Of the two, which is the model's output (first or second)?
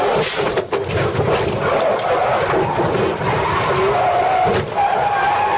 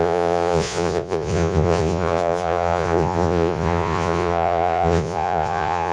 second